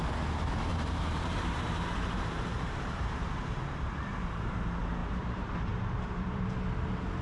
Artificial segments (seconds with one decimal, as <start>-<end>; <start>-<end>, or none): 0.7-3.6; 5.0-6.6